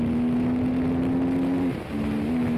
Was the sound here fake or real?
real